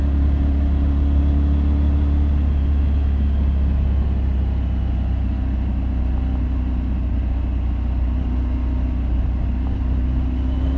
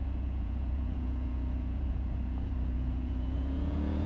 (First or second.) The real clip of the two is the first